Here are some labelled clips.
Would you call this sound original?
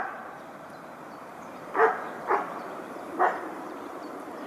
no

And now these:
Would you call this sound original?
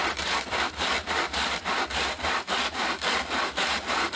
no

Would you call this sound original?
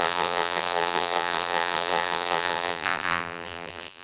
no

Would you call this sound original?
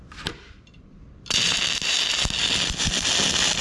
yes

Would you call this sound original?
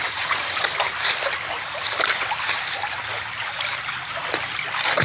yes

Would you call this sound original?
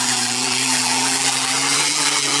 no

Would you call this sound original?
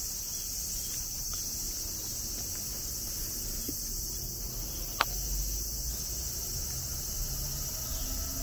yes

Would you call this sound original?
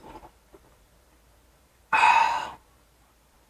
no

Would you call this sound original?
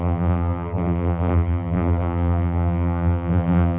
no